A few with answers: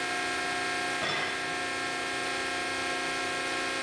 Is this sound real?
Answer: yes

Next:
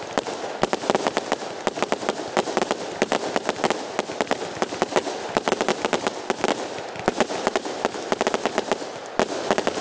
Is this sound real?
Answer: yes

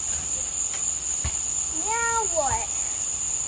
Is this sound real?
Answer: yes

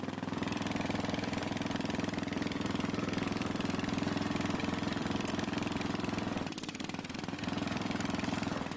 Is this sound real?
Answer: no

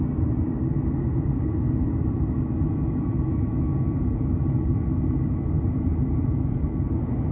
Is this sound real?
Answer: yes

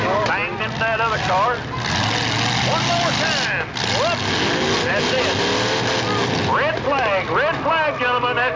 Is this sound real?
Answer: yes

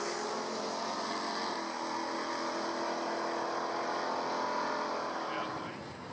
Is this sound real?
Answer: yes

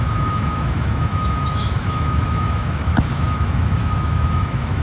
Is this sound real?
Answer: no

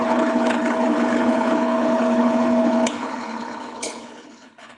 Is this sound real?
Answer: no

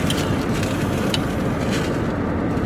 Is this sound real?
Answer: yes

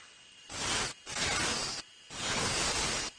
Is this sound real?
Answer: yes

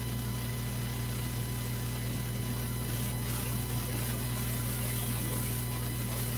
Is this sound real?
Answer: no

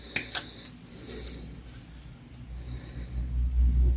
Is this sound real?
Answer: yes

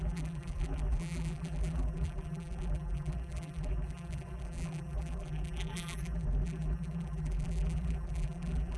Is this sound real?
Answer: no